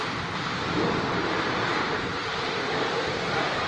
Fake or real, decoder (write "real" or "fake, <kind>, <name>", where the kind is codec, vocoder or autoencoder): fake, vocoder, BigVGAN v2